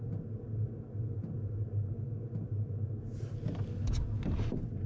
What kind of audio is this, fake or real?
real